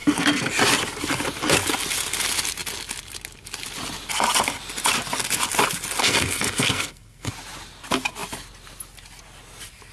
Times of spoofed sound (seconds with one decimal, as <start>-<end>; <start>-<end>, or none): 0.0-0.5; 6.0-7.3